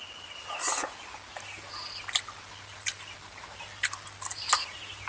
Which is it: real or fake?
real